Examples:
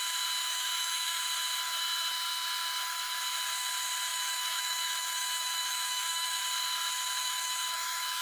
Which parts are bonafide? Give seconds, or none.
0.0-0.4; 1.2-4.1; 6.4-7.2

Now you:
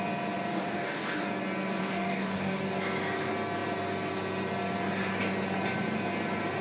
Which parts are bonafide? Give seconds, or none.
0.0-0.5; 1.2-1.8; 2.6-6.6

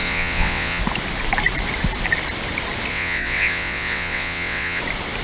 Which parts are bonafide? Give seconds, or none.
0.8-2.9; 4.8-5.2

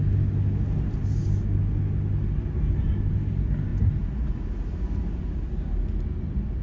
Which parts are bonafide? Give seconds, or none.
0.0-6.6